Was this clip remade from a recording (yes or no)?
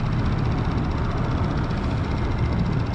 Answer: no